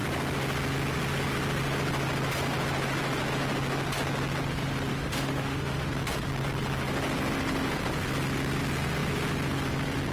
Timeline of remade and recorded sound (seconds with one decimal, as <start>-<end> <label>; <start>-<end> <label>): 0.0-4.9 recorded; 4.9-5.9 remade; 5.9-10.1 recorded

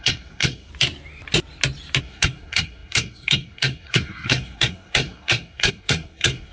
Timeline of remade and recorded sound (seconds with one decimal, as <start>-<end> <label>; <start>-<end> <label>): 0.0-0.7 remade; 0.7-2.0 recorded; 2.0-6.5 remade

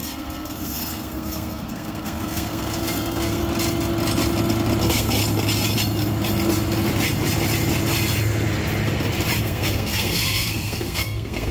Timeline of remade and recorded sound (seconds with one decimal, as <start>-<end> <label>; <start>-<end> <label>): 0.0-3.4 remade; 3.4-4.8 recorded; 4.8-5.2 remade; 5.2-9.4 recorded; 9.4-11.5 remade

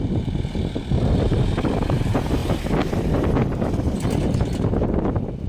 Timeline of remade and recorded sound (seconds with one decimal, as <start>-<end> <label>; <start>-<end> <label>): 0.0-5.5 recorded

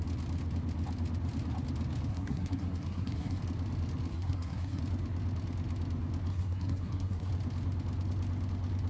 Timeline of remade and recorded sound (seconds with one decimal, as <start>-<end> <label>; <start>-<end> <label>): 0.0-2.1 recorded; 2.1-3.4 remade; 3.4-4.1 recorded; 4.1-4.8 remade; 4.8-6.3 recorded; 6.3-7.3 remade; 7.3-8.9 recorded

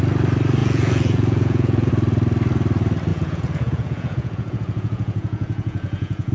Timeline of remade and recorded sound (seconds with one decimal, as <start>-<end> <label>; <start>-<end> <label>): 0.0-0.6 recorded; 0.6-1.9 remade; 1.9-3.1 recorded; 3.1-6.3 remade

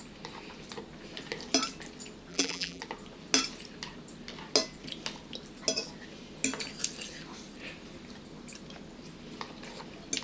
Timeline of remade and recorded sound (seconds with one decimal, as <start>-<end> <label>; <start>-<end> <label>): 0.0-2.3 recorded; 2.3-2.8 remade; 2.8-10.2 recorded